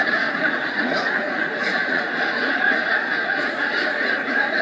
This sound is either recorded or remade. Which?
remade